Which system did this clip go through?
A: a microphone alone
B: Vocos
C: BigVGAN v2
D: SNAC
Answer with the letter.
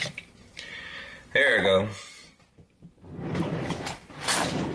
A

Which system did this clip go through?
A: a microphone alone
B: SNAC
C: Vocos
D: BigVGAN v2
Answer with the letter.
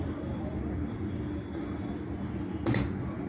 A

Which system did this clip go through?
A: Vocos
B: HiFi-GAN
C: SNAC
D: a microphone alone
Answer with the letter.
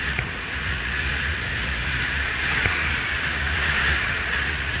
A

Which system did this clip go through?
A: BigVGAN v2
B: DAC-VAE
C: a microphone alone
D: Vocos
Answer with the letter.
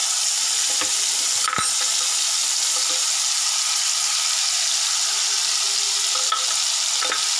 C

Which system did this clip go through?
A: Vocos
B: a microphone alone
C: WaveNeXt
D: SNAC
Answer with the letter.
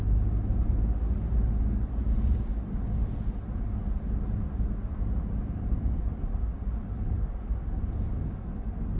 B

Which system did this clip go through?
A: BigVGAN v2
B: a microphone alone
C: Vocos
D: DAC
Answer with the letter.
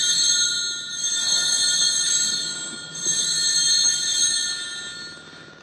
B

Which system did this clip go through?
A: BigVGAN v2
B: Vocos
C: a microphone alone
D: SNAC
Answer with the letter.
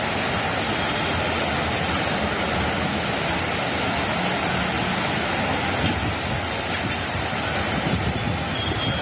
C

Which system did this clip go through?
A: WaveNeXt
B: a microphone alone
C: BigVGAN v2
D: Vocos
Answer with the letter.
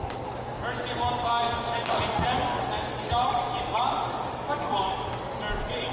B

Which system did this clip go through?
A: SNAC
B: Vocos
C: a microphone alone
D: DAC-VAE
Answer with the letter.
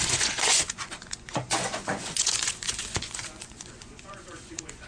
B